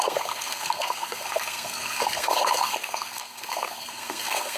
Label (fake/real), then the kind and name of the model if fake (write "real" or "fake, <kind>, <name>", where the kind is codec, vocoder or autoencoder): fake, codec, SNAC